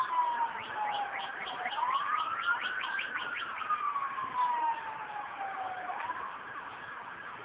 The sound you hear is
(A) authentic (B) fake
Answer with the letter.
A